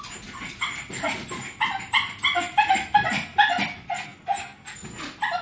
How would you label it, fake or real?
real